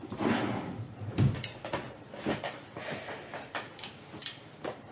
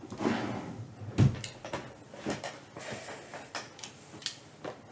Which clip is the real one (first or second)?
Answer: second